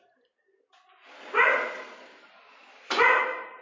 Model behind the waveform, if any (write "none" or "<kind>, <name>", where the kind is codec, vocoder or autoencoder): none